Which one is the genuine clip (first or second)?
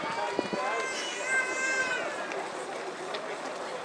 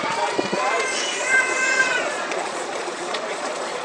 first